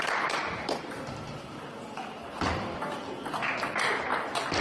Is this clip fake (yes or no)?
no